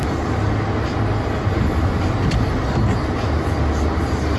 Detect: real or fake real